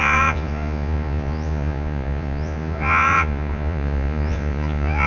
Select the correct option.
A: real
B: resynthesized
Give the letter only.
B